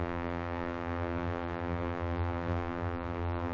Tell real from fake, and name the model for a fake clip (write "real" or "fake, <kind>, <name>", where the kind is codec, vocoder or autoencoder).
fake, vocoder, BigVGAN v2